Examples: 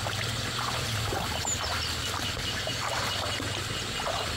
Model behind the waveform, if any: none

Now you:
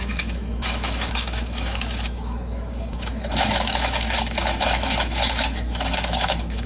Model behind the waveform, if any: autoencoder, DAC-VAE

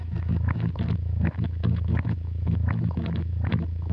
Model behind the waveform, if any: autoencoder, DAC-VAE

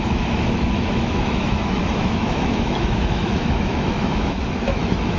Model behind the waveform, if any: autoencoder, DAC-VAE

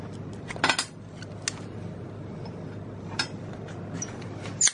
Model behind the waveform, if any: none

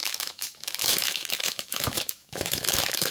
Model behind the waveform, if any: autoencoder, DAC-VAE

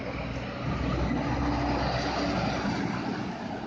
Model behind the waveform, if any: none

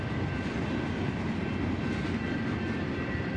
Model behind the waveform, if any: none